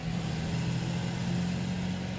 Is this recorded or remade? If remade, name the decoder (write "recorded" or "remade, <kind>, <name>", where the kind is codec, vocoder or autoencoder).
recorded